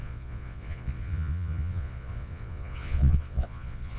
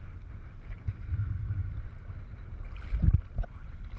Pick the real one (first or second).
second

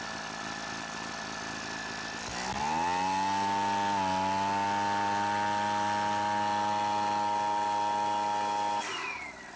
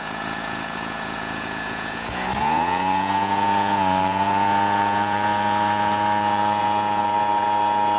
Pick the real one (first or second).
first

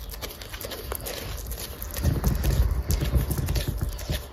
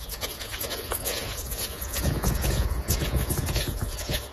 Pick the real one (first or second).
first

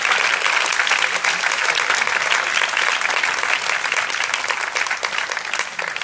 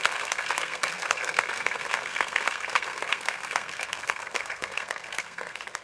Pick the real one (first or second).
first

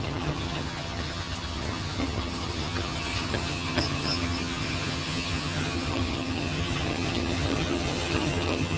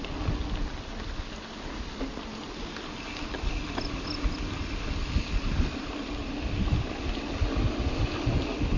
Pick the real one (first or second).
second